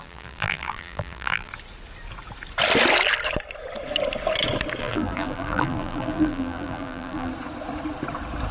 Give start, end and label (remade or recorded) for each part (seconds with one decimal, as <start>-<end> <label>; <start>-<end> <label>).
0.0-1.5 remade; 1.5-4.8 recorded; 4.8-7.3 remade; 7.3-8.5 recorded